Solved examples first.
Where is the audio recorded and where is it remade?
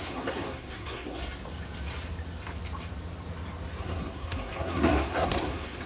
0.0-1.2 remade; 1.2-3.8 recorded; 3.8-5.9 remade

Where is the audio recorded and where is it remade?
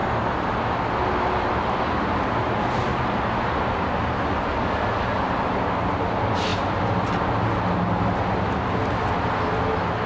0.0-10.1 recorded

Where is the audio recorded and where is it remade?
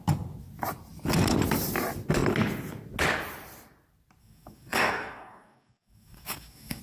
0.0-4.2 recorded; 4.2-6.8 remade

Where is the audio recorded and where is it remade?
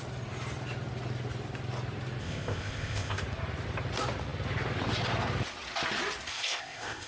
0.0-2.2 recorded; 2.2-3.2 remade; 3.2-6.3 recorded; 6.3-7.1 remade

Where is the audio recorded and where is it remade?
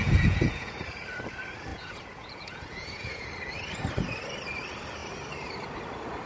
0.0-0.8 remade; 0.8-1.7 recorded; 1.7-3.3 remade; 3.3-6.3 recorded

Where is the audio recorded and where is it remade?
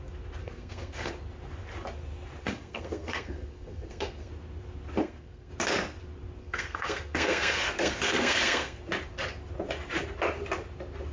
0.0-0.4 recorded; 0.4-1.1 remade; 1.1-2.4 recorded; 2.4-4.3 remade; 4.3-5.0 recorded; 5.0-5.5 remade; 5.5-6.4 recorded; 6.4-8.8 remade; 8.8-11.1 recorded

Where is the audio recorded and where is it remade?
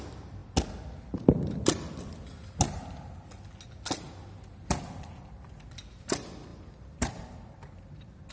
0.0-6.5 recorded; 6.5-7.3 remade; 7.3-8.3 recorded